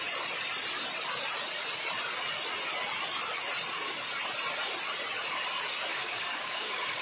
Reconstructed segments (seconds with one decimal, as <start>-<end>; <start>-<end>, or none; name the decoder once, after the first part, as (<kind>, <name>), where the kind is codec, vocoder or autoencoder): 5.9-7.0 (codec, DAC)